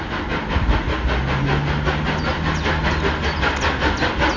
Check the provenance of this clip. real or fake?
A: real